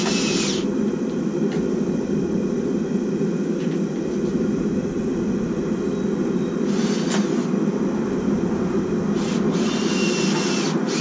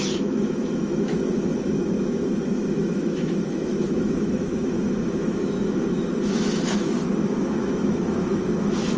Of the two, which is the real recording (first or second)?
first